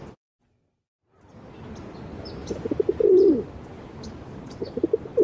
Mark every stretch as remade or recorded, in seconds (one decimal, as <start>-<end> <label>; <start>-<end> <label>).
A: 0.0-3.7 recorded; 3.7-5.2 remade